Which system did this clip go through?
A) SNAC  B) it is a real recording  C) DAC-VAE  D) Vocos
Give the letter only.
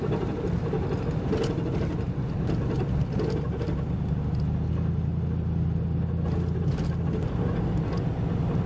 B